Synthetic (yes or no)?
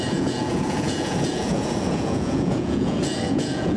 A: yes